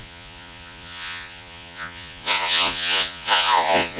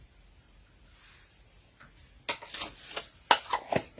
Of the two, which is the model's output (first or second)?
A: first